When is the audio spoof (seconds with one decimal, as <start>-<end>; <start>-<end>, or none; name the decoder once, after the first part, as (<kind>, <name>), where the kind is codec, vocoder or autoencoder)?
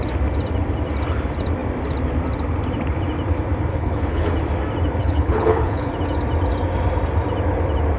3.7-4.3 (codec, HILCodec); 5.0-5.9